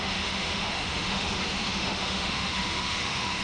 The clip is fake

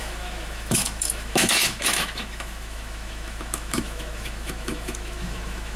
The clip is fake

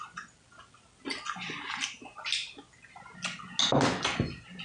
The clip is real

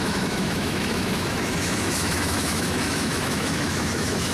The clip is fake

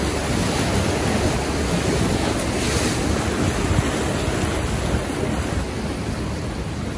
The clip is real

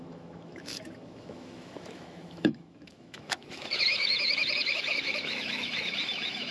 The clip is fake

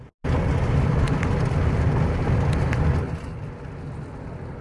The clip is real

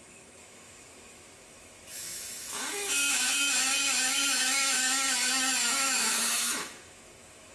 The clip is fake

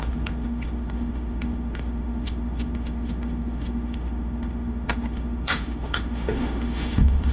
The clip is fake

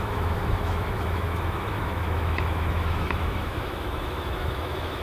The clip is fake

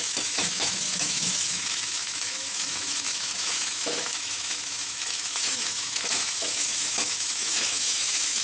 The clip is fake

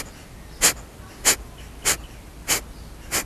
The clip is real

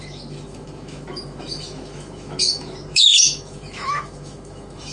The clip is fake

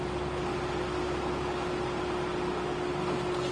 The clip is real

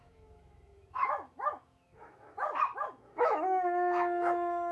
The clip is fake